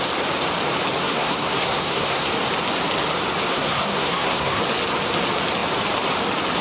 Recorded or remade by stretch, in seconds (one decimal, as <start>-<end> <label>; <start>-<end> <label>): 0.0-1.0 recorded; 1.0-2.3 remade; 2.3-3.5 recorded; 3.5-4.6 remade; 4.6-6.6 recorded